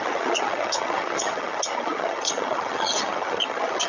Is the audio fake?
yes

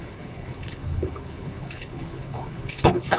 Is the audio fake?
yes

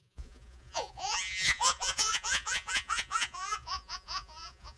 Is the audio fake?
yes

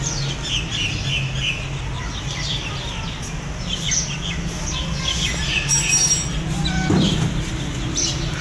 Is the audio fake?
no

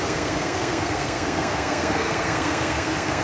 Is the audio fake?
yes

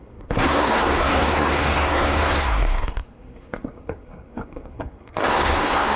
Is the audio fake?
yes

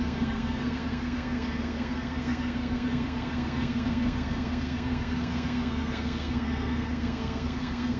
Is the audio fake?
yes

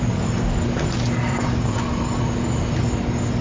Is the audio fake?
no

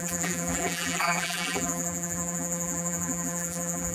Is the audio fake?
yes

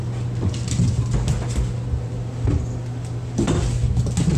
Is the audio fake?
no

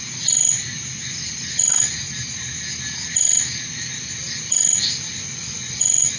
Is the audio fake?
no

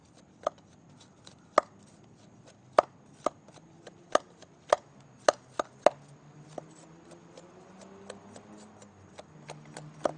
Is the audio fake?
no